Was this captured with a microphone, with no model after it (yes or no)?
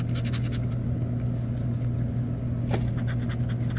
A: yes